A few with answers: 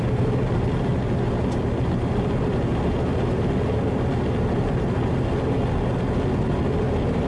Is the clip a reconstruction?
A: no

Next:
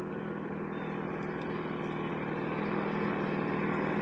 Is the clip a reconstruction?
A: no